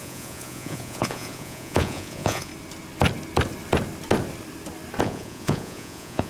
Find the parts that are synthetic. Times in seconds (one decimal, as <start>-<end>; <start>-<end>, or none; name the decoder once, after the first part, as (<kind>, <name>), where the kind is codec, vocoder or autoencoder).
0.0-2.5 (vocoder, Vocos); 5.0-6.3